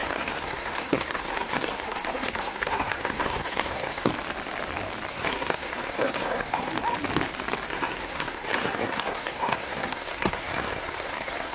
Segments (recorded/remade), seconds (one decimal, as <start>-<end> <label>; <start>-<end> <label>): 0.0-4.1 remade; 4.1-5.1 recorded; 5.1-6.7 remade; 6.7-7.7 recorded; 7.7-11.5 remade